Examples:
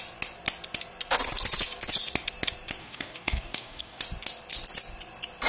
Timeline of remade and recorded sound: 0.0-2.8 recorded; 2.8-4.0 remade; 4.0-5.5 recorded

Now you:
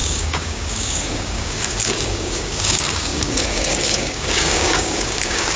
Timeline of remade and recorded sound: 0.0-5.6 remade

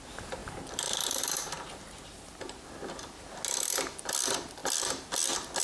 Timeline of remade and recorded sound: 0.0-5.6 recorded